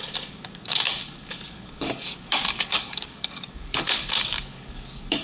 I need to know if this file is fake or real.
fake